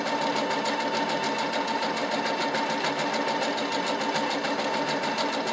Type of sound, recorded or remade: recorded